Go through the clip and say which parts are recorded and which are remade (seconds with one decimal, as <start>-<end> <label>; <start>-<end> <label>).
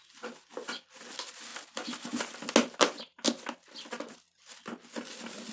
0.0-5.5 recorded